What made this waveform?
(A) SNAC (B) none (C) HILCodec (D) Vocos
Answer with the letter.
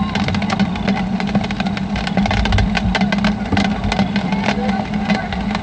B